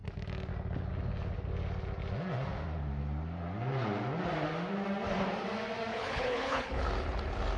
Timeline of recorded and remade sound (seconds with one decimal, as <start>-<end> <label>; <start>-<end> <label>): 0.0-5.9 recorded; 5.9-6.8 remade; 6.8-7.6 recorded